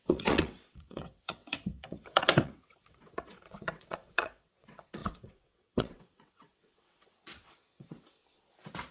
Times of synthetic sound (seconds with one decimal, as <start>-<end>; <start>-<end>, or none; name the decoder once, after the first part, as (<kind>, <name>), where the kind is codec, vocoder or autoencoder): 0.0-8.2 (vocoder, WaveNeXt)